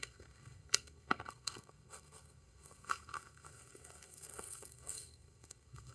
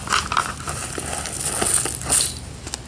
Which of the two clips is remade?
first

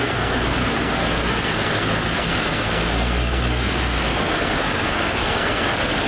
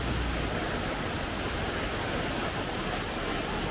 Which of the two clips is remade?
first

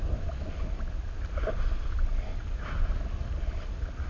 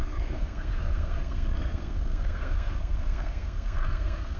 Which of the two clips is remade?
second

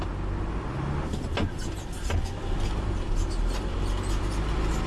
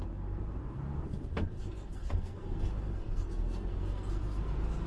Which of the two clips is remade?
second